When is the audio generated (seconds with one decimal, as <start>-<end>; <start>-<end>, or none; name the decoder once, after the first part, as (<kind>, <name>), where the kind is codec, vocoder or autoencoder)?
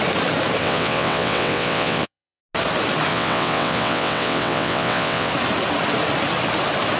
0.6-2.4 (vocoder, WaveNeXt); 3.1-5.3